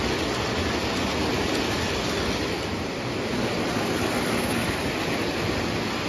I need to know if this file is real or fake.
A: real